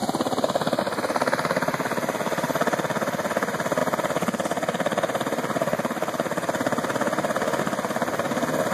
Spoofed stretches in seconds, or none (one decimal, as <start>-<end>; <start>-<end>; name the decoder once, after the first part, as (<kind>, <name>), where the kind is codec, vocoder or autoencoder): none